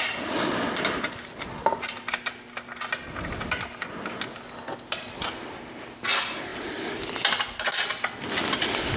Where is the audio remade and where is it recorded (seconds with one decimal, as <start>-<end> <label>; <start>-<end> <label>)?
0.0-9.0 recorded